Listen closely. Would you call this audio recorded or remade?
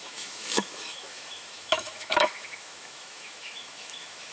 remade